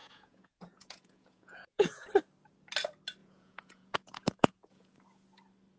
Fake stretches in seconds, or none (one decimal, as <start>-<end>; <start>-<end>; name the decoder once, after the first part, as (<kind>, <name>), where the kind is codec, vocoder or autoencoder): 0.0-2.1 (vocoder, Vocos); 3.2-4.9